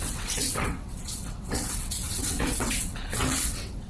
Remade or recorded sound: remade